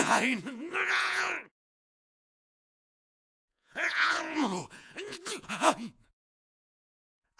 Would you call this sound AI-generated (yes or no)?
yes